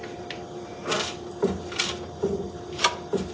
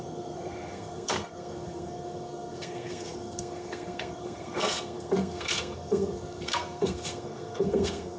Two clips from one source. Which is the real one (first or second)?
first